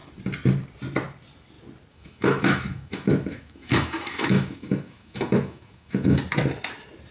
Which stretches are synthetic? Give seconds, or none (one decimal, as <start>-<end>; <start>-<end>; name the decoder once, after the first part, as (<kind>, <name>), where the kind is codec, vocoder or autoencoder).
1.9-6.2 (autoencoder, DAC-VAE)